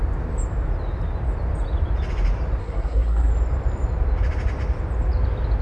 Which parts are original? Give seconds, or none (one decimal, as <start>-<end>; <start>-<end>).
0.0-2.6; 3.3-5.6